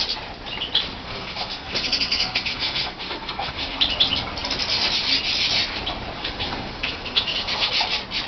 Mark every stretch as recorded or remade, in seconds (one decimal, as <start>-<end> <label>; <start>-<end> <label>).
0.0-1.0 recorded; 1.0-3.8 remade; 3.8-6.2 recorded; 6.2-7.7 remade; 7.7-8.3 recorded